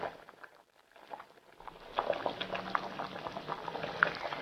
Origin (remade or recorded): recorded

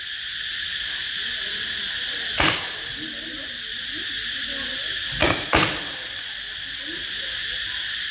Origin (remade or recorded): recorded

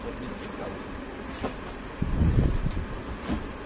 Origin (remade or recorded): remade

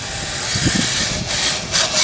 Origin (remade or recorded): recorded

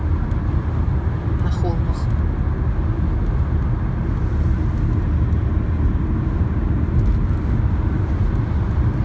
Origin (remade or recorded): recorded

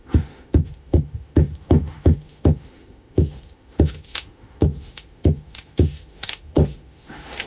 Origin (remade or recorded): remade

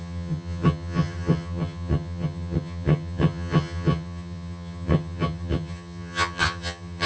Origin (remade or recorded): remade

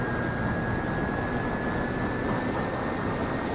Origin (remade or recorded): recorded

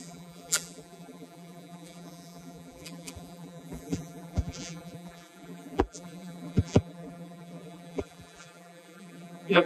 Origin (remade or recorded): remade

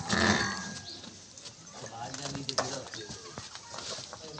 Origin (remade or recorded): recorded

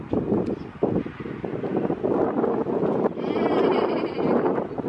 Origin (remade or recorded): recorded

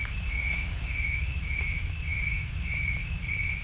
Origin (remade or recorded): remade